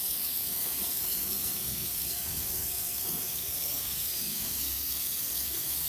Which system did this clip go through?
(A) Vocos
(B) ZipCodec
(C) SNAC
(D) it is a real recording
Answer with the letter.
C